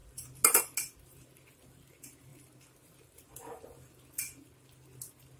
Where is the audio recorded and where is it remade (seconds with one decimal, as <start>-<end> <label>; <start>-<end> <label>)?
0.0-2.3 recorded; 2.3-3.6 remade; 3.6-5.4 recorded